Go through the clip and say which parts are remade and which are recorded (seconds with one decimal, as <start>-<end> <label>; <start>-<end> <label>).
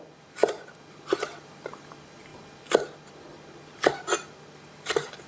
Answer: 0.0-0.4 remade; 0.4-0.9 recorded; 0.9-5.3 remade